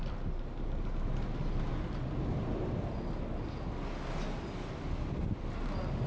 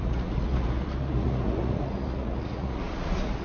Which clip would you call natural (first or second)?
first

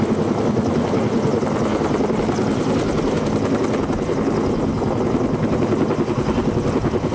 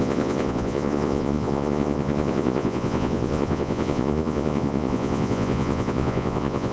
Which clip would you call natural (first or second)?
first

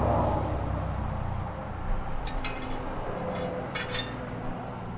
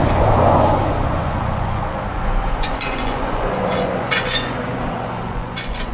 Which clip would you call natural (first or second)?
first